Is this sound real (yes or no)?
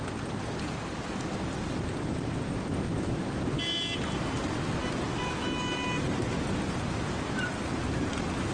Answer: yes